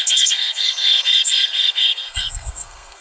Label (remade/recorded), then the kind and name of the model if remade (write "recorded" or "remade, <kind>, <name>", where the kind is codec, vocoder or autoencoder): remade, codec, SNAC